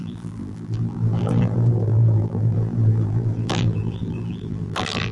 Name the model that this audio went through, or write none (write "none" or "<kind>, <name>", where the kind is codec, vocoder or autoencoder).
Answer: vocoder, BigVGAN v2